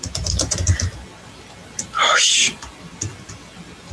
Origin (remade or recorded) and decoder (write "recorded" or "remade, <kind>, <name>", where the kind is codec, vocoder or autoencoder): recorded